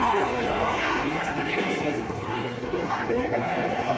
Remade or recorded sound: remade